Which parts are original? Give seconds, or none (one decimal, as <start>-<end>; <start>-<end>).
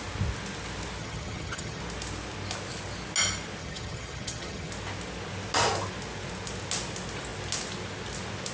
0.0-1.0; 1.8-3.6; 4.7-8.5